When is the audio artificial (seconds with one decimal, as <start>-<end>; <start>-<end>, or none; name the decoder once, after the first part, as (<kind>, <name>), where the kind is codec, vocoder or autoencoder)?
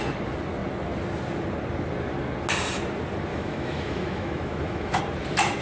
3.3-5.0 (autoencoder, DAC-VAE)